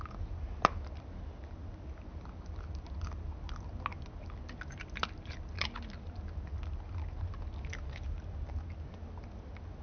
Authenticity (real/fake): real